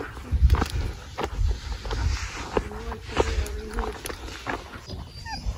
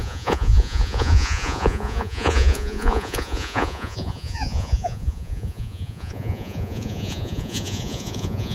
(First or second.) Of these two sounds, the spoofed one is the second